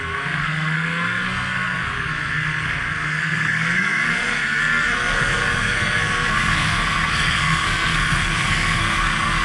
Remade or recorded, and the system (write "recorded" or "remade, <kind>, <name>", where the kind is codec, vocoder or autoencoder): remade, codec, SNAC